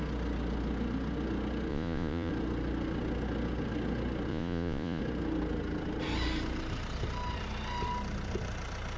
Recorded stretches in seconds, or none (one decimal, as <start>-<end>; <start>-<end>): 0.0-1.7; 2.3-4.3; 5.0-9.0

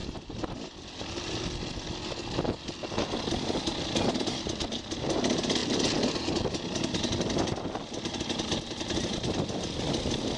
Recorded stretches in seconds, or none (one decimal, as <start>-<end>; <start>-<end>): 0.7-10.4

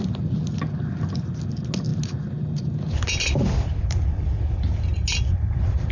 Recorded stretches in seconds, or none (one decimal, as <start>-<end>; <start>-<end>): 0.0-5.9

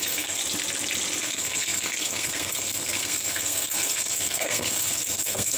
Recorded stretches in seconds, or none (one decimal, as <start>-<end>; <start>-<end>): 0.4-1.2

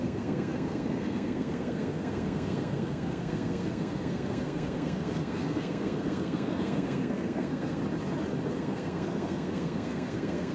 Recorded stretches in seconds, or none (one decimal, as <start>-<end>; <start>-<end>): 7.8-8.5

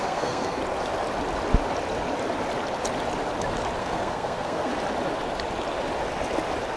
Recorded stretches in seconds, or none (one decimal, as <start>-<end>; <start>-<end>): 0.6-3.8; 4.7-6.8

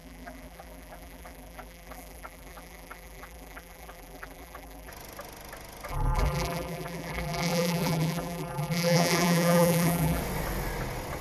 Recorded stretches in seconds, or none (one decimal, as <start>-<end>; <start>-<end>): 4.9-5.9; 10.2-11.2

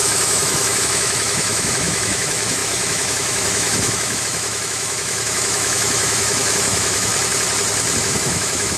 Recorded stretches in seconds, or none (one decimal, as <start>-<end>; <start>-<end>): 7.1-8.0